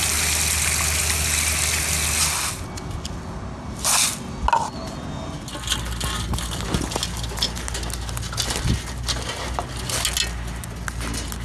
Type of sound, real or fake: real